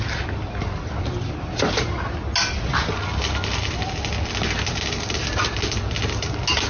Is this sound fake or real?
real